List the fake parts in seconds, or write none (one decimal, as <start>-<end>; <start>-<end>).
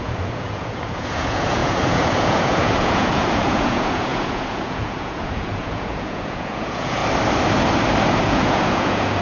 0.0-7.0; 8.2-9.2